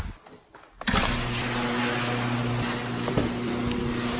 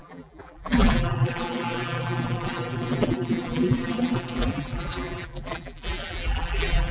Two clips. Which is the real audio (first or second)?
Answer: first